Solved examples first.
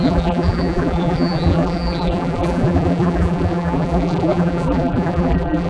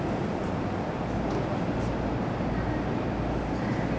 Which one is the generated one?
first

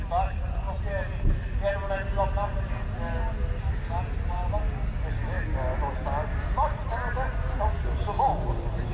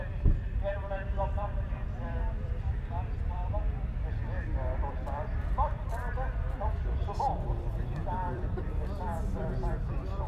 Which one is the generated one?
second